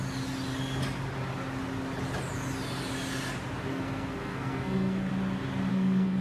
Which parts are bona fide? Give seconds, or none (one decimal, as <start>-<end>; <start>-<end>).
0.0-3.7; 5.1-5.7